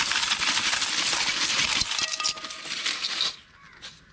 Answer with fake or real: real